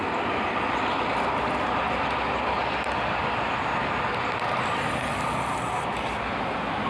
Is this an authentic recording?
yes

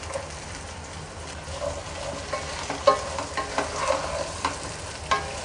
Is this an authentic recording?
yes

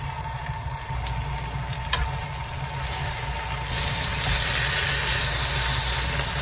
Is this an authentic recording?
yes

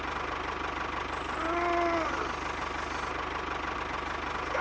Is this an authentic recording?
yes